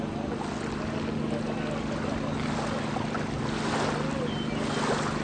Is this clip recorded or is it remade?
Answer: recorded